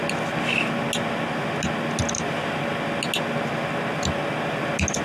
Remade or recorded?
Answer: recorded